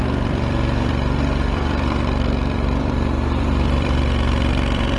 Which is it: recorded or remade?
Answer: remade